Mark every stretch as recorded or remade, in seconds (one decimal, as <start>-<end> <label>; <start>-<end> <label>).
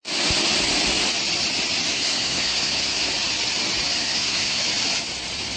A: 0.0-1.9 recorded; 1.9-3.1 remade; 3.1-4.0 recorded; 4.0-4.6 remade; 4.6-5.6 recorded